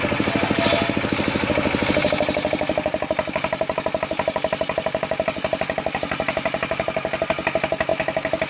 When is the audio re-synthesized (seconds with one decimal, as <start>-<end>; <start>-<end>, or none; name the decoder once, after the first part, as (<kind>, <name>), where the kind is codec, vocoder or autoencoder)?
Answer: none